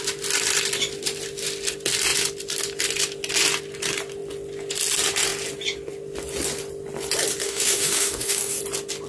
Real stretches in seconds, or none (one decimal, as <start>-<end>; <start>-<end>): 0.0-7.4; 8.6-9.1